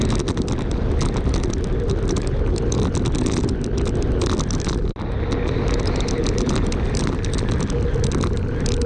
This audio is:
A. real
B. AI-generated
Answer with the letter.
A